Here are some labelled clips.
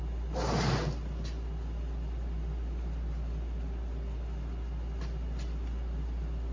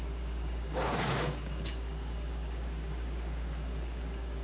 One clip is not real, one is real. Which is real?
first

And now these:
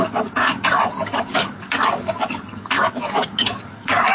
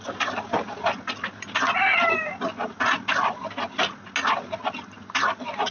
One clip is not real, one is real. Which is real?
second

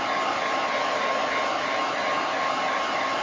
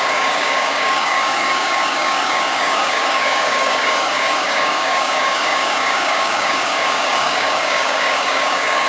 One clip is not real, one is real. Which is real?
first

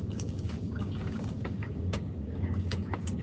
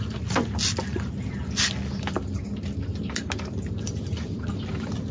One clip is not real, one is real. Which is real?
second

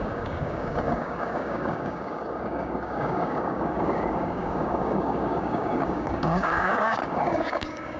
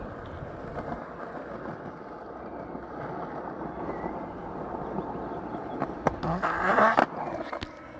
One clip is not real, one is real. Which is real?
second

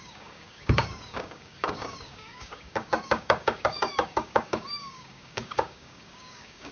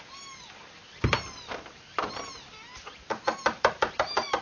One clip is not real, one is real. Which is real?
second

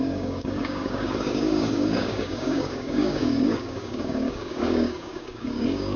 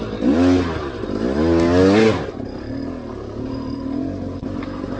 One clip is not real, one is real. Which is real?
second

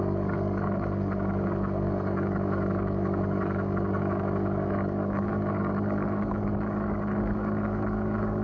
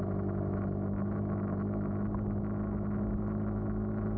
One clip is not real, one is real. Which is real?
second